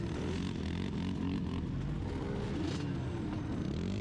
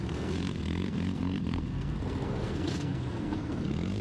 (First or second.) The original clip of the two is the first